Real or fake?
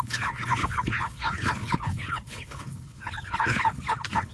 fake